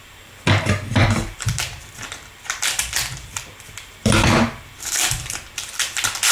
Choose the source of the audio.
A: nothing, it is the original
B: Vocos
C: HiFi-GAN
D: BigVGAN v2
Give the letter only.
D